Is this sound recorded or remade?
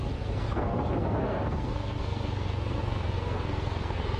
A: remade